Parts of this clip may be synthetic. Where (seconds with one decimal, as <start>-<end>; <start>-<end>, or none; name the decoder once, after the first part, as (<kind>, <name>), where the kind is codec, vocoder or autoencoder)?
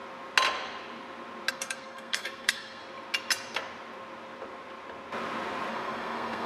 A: 1.5-2.8 (codec, SNAC); 5.7-6.5